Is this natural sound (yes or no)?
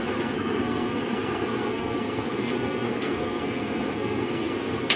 no